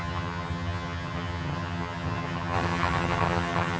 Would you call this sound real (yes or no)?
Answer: no